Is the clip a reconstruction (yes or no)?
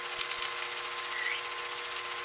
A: no